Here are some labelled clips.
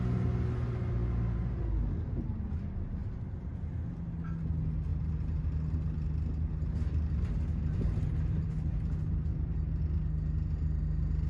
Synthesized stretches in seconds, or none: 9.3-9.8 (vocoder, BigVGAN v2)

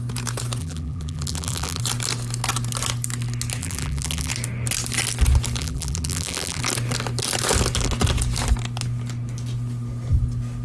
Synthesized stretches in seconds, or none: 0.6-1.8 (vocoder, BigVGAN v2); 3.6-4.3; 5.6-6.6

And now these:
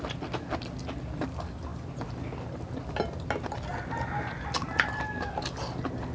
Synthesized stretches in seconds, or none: none

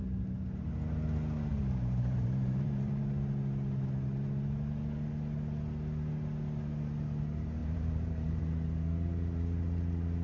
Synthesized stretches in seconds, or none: 1.5-3.0 (vocoder, BigVGAN v2); 7.6-8.4

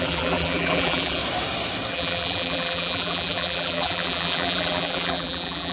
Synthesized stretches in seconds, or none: 0.0-1.2 (vocoder, BigVGAN v2); 1.9-5.7

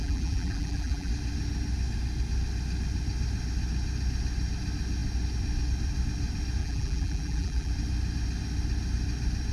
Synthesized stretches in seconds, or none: 0.0-1.1 (vocoder, BigVGAN v2); 6.6-7.7